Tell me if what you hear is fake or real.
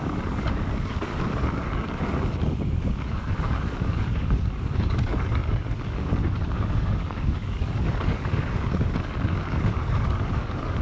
fake